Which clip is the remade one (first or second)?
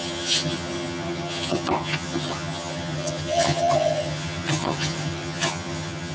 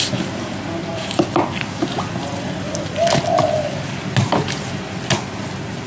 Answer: first